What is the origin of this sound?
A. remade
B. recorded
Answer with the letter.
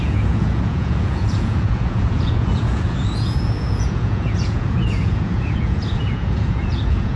A